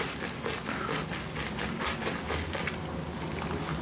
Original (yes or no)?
yes